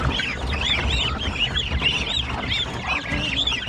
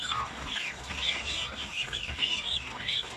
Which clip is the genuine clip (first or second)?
first